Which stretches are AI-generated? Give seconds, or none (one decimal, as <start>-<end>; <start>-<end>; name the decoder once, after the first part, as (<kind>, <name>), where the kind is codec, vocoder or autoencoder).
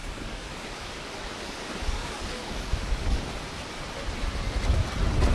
0.0-3.2 (codec, DAC)